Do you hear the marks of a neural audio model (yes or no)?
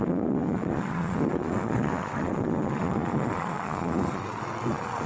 yes